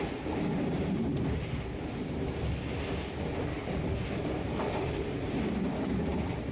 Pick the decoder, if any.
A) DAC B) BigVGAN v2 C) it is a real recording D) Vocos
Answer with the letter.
C